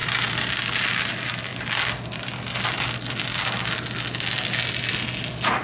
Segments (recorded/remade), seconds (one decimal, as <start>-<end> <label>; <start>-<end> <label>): 0.0-5.6 recorded